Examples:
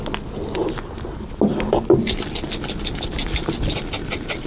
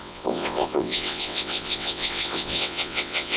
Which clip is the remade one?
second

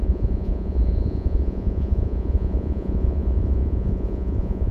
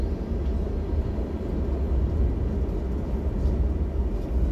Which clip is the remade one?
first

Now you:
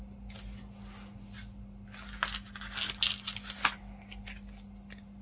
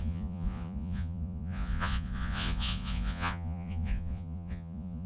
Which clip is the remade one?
second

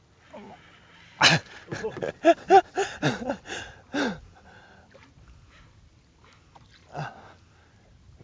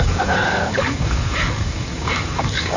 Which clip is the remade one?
second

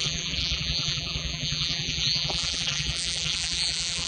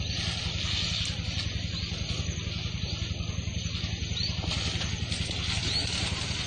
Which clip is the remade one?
first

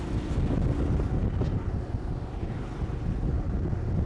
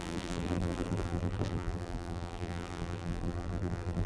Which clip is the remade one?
second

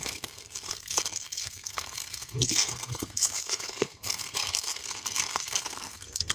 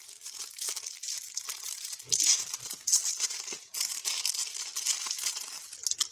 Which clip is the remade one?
first